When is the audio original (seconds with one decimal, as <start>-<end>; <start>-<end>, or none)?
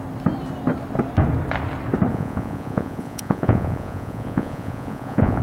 0.0-2.1